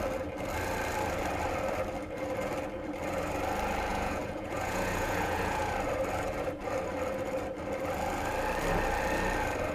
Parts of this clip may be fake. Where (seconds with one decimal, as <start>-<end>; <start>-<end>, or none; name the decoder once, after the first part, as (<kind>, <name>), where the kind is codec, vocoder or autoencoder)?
3.9-5.7 (vocoder, Vocos)